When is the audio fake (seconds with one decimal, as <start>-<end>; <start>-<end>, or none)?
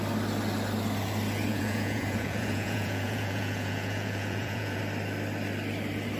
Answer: 1.5-4.8